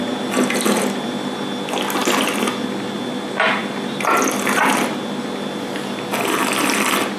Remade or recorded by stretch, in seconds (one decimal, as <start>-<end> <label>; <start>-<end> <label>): 0.0-7.2 recorded